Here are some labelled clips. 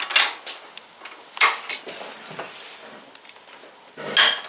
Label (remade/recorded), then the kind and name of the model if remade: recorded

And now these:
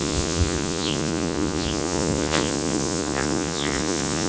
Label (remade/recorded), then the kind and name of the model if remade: remade, vocoder, Vocos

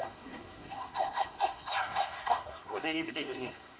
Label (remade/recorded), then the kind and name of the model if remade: remade, codec, SNAC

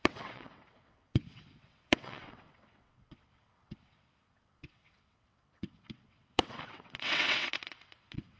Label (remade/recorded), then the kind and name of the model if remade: remade, vocoder, WaveNeXt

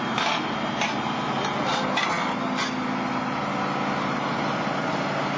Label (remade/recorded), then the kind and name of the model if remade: recorded